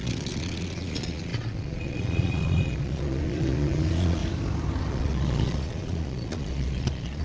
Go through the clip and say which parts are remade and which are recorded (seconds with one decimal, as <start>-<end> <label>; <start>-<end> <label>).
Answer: 0.0-4.2 remade; 4.2-4.9 recorded; 4.9-7.2 remade